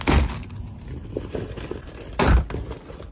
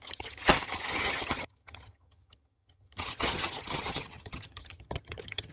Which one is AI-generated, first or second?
second